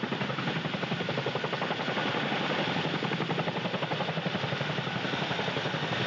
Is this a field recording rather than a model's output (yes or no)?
yes